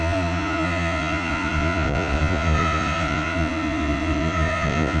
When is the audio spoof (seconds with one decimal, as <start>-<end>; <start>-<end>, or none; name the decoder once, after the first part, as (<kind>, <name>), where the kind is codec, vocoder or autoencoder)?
0.0-5.0 (vocoder, Vocos)